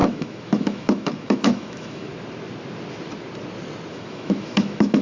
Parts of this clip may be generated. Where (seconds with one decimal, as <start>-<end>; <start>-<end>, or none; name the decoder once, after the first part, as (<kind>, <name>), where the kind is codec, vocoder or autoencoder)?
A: 0.0-2.1 (autoencoder, DAC-VAE); 3.9-5.0